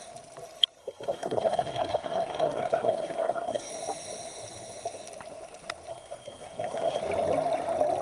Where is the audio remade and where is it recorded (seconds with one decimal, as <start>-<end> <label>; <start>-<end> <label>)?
0.0-0.8 recorded; 0.8-3.7 remade; 3.7-5.9 recorded; 5.9-7.0 remade; 7.0-8.0 recorded